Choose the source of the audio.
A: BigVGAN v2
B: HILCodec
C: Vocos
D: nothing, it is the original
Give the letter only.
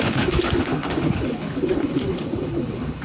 B